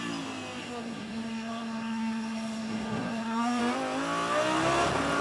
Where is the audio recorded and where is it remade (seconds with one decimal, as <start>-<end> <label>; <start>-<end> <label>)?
0.0-0.6 recorded; 0.6-3.6 remade; 3.6-5.2 recorded